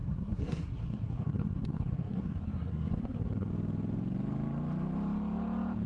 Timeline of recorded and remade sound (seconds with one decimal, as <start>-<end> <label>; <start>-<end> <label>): 0.0-3.5 remade; 3.5-5.9 recorded